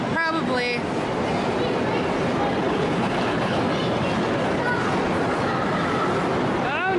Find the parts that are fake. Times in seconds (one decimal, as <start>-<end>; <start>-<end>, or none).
2.6-3.6